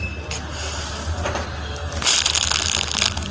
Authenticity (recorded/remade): remade